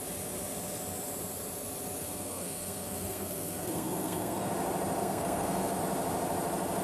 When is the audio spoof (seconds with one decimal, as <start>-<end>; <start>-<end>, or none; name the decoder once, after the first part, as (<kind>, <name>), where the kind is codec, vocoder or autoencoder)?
2.0-4.5 (codec, SNAC); 5.0-5.8